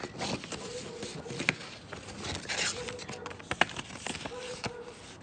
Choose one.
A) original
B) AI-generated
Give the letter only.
A